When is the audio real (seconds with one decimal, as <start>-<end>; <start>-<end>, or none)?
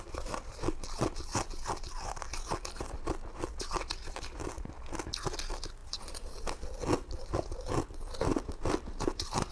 0.0-9.5